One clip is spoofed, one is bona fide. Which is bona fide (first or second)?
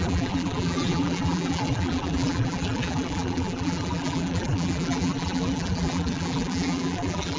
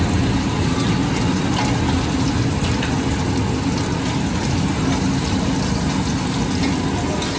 second